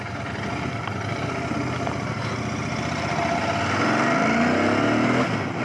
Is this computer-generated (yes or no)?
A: no